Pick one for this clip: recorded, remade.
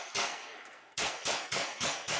remade